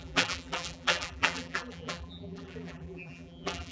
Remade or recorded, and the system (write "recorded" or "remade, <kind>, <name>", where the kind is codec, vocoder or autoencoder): remade, vocoder, BigVGAN v2